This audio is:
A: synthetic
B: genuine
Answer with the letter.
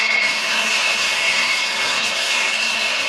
A